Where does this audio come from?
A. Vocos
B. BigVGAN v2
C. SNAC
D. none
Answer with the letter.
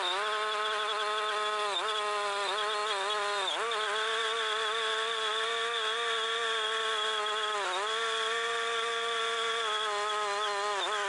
D